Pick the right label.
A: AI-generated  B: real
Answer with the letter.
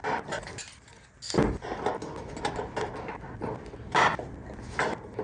B